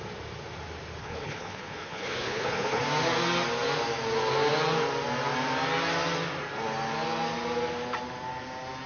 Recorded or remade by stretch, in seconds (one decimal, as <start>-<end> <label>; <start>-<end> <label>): 0.0-1.0 recorded; 1.0-2.8 remade; 2.8-8.9 recorded